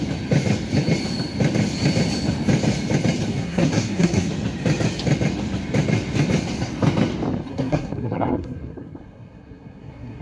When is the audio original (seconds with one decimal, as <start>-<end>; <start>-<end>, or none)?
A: 0.0-3.3; 4.3-7.5